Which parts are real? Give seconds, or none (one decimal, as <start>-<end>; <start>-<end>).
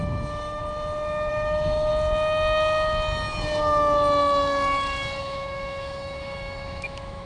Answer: 0.6-1.3; 1.9-5.2